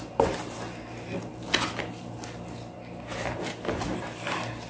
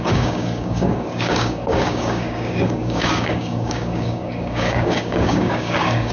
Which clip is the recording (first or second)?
first